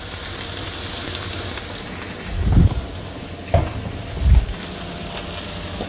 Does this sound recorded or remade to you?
recorded